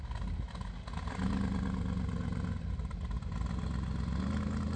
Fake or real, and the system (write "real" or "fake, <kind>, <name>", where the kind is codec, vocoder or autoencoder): real